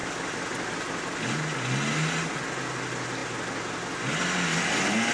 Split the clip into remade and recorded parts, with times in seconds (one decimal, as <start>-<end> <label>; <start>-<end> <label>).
0.0-5.1 recorded